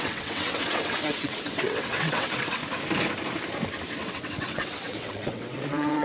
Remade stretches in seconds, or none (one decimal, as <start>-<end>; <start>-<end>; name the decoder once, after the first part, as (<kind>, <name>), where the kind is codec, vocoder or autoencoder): 0.0-2.6 (vocoder, WaveNeXt); 4.1-6.0